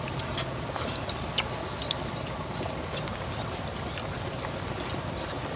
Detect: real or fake real